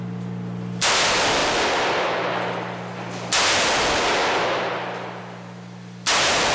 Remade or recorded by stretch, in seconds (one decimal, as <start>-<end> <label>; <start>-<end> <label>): 0.0-6.5 recorded